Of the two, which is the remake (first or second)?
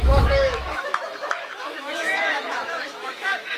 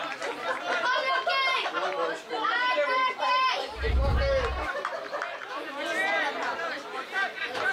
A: first